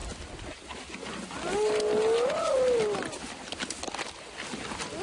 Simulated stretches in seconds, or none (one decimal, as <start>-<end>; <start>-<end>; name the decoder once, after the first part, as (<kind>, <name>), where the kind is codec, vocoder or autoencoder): none